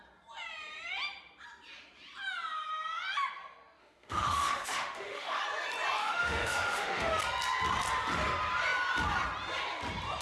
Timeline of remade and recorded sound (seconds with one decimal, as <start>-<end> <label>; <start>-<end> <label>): 0.0-3.8 recorded; 3.8-5.4 remade; 5.4-6.0 recorded; 6.0-7.2 remade; 7.2-10.2 recorded